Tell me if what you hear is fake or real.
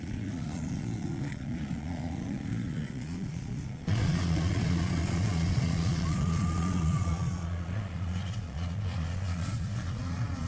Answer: fake